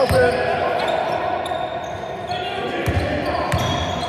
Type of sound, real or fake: real